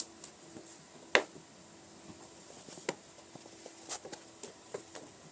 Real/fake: real